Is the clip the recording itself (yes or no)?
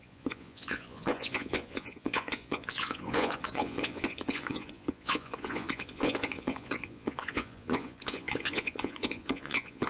no